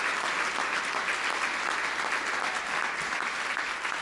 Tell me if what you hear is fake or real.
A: real